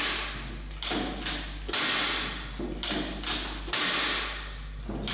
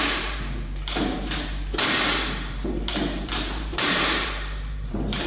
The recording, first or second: first